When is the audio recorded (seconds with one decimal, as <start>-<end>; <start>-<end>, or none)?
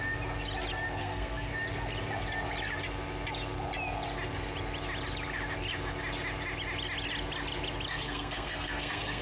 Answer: 0.0-1.0; 1.5-7.9